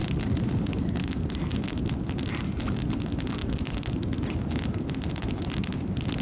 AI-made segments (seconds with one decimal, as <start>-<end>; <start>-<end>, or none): 0.0-1.5; 3.4-3.9